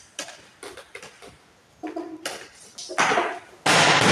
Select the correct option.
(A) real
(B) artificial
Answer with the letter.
A